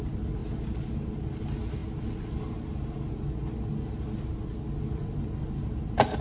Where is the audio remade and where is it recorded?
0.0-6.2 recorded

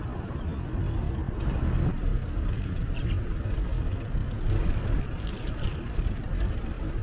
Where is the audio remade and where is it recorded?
0.0-7.0 recorded

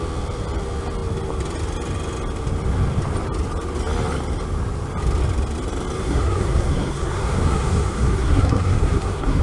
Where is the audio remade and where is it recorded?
0.0-6.0 recorded; 6.0-9.4 remade

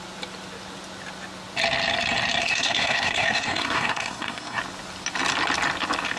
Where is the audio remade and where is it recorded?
0.0-2.4 recorded; 2.4-4.6 remade; 4.6-6.2 recorded